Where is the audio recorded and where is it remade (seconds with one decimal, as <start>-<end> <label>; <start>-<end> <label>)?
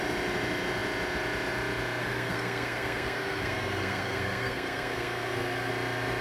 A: 0.0-2.0 recorded; 2.0-5.7 remade; 5.7-6.2 recorded